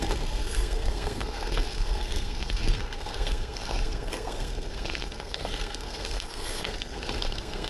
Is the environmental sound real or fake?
fake